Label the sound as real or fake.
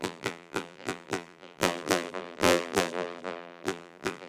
fake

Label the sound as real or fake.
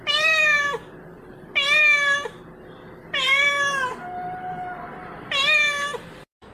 fake